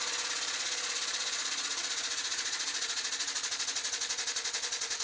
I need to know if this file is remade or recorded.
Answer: remade